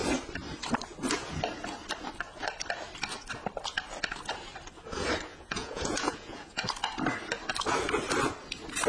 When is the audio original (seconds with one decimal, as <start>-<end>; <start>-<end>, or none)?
0.0-5.3; 6.6-8.9